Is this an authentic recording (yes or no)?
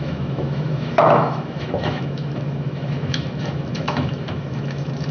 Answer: no